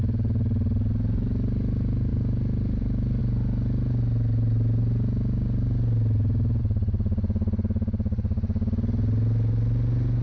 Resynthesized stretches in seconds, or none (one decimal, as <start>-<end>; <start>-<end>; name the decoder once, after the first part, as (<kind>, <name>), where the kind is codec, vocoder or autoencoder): none